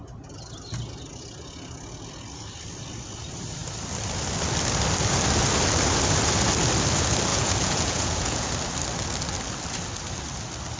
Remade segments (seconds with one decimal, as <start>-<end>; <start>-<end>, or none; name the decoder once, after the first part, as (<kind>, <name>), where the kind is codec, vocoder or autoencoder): 7.3-8.5 (vocoder, Vocos)